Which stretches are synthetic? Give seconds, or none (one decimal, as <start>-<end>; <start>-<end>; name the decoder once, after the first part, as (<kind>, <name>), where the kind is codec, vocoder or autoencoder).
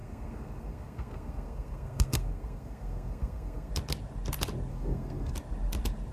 0.0-3.7 (codec, SNAC); 4.7-5.3